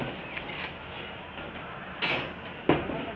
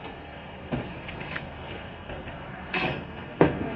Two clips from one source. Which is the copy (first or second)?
second